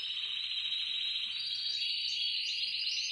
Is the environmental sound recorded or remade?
recorded